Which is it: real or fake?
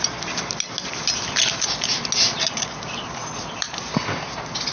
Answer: real